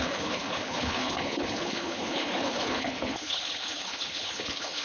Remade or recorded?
remade